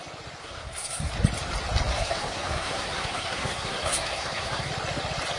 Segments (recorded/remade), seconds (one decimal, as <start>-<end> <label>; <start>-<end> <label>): 0.0-0.4 recorded; 0.4-1.1 remade; 1.1-1.9 recorded; 1.9-4.7 remade; 4.7-5.4 recorded